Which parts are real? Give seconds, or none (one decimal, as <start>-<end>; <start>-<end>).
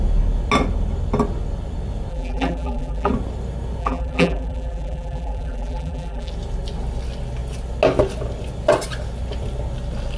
0.0-2.1; 3.1-3.8; 6.3-10.2